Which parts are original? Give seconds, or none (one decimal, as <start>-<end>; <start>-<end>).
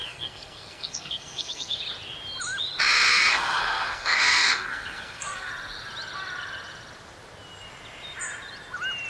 1.8-3.1; 5.5-9.1